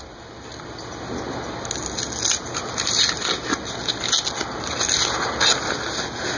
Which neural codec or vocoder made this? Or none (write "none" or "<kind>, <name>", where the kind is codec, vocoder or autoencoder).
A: none